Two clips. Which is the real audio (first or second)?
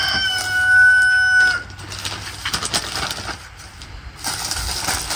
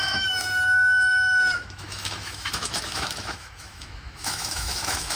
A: first